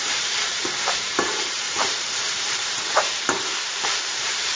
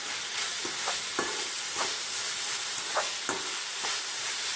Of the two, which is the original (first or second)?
second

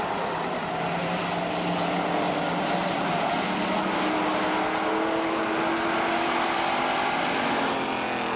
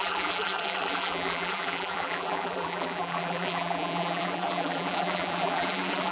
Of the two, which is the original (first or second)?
first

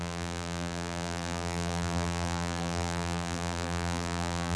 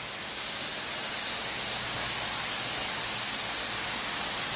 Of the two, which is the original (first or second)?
second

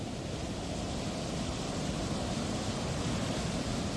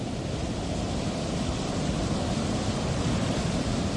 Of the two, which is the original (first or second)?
first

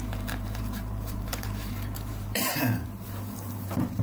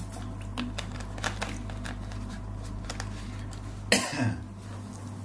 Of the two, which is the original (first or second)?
second